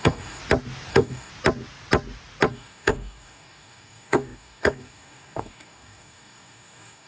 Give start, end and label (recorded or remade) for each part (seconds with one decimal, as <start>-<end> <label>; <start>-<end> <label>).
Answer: 0.0-0.4 remade; 0.4-0.9 recorded; 0.9-1.3 remade; 1.3-2.5 recorded; 2.5-7.1 remade